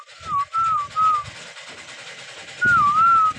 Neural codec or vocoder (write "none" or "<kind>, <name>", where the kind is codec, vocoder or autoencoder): none